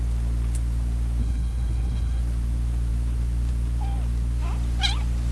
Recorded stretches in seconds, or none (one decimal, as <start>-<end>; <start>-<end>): 0.0-1.2; 2.2-5.3